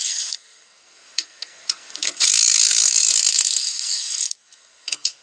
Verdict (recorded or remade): remade